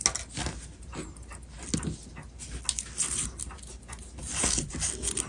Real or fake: real